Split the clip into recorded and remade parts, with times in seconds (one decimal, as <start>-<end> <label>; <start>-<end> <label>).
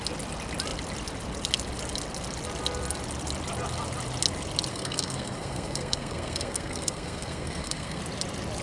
0.0-4.7 recorded; 4.7-8.0 remade; 8.0-8.6 recorded